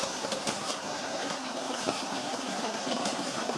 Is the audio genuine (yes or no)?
no